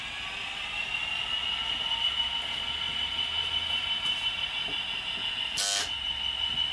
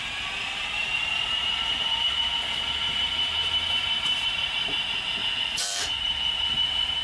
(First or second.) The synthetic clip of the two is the second